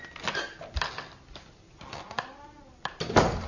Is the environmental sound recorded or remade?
recorded